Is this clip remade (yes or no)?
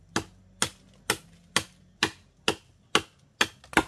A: no